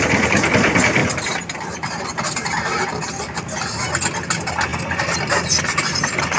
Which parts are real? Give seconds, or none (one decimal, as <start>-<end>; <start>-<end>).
0.0-6.4